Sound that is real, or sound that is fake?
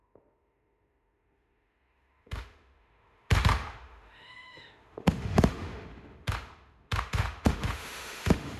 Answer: fake